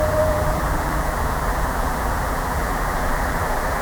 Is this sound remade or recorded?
remade